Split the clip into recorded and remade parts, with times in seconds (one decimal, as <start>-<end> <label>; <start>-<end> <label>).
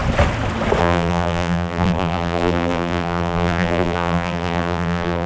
0.0-0.8 recorded; 0.8-5.3 remade